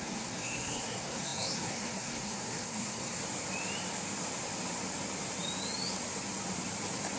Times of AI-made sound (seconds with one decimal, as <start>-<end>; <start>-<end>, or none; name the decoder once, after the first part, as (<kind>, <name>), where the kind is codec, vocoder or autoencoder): 0.0-3.2 (codec, SNAC)